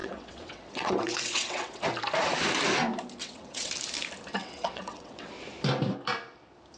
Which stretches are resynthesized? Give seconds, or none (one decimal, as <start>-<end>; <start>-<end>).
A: 0.0-1.8; 3.2-3.7; 4.4-5.3